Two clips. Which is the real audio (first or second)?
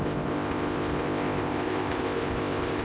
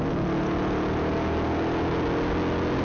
second